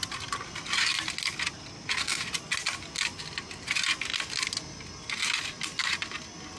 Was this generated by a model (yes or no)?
no